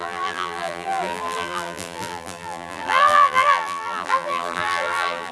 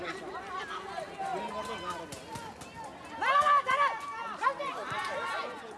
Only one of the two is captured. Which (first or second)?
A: second